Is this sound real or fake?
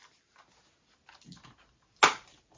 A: real